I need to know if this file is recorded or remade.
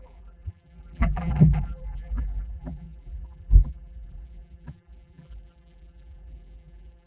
remade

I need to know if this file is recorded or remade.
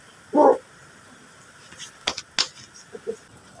recorded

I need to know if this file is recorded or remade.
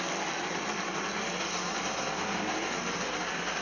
remade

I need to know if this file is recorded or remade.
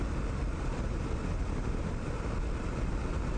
recorded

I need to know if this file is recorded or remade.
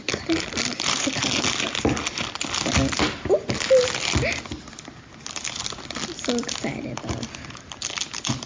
recorded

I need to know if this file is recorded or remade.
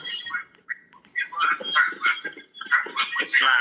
remade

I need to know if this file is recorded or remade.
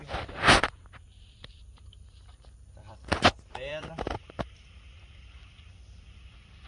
remade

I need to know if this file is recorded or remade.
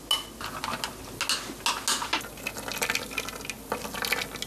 recorded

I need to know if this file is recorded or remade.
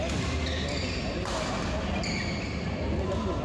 recorded